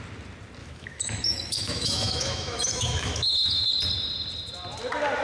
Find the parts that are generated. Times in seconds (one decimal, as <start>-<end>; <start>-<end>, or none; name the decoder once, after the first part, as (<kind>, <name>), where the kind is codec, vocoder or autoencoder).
0.6-3.7 (autoencoder, DAC-VAE)